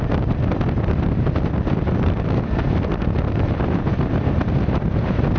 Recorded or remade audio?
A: recorded